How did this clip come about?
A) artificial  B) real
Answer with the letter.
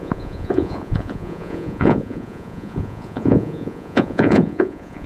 A